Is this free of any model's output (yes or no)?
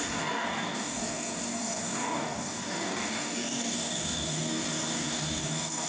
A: no